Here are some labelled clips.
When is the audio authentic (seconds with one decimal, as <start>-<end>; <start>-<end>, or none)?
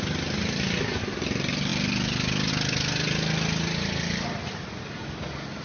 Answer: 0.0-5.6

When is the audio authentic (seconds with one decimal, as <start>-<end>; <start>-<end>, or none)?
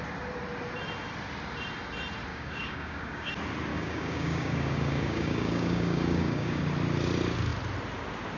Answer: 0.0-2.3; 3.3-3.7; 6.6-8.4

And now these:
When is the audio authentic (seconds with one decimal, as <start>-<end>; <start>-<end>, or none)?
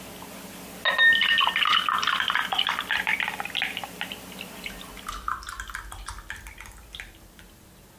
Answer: 0.0-8.0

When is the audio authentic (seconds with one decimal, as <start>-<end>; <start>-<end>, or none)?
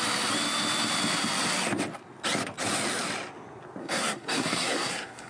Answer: 0.0-3.8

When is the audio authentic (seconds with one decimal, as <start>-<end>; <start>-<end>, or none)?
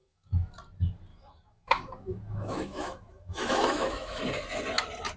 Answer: 0.5-1.1; 4.2-5.2